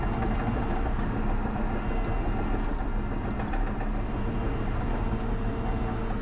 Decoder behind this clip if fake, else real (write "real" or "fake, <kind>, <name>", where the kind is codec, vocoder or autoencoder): real